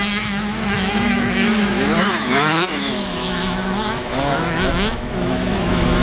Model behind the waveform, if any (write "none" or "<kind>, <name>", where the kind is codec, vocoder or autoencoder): autoencoder, DAC-VAE